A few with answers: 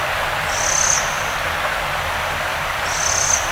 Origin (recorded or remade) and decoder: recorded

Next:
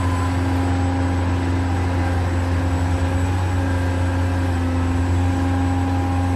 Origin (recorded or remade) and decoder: recorded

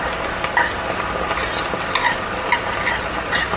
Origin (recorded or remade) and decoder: recorded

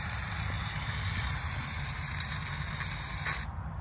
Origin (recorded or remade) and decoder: recorded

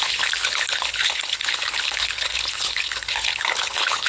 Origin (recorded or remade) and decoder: remade, codec, HILCodec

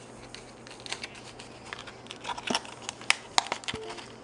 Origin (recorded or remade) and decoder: recorded